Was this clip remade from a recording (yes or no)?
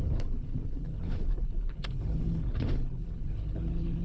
yes